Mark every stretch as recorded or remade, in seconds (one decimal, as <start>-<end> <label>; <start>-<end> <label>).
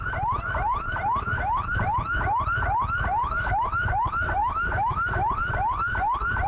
0.0-3.2 recorded; 3.2-3.9 remade; 3.9-4.4 recorded; 4.4-5.3 remade; 5.3-6.5 recorded